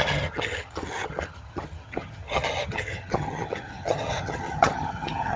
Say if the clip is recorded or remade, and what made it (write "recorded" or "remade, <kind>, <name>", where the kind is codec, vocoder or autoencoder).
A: remade, vocoder, HiFi-GAN